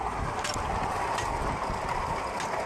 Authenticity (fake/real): real